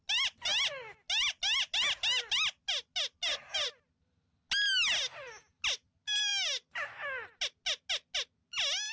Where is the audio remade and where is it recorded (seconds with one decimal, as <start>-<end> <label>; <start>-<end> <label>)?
0.0-8.9 recorded